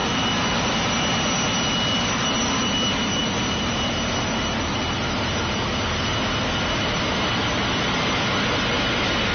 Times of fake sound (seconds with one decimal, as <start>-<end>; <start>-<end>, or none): 0.0-0.9; 3.2-3.7